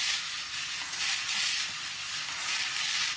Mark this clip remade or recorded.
recorded